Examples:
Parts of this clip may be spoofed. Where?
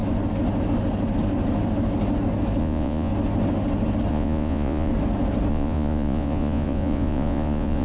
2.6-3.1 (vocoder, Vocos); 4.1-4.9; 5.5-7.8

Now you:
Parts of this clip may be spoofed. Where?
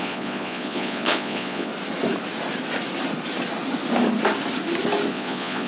0.0-1.7 (vocoder, Vocos); 5.1-5.7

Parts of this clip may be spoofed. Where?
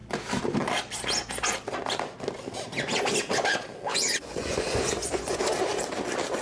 3.9-5.4 (vocoder, Vocos)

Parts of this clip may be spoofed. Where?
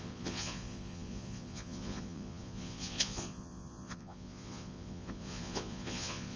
0.0-6.4 (vocoder, Vocos)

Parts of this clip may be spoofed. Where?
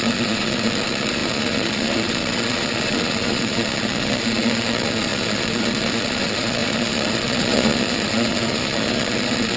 0.0-9.6 (vocoder, Vocos)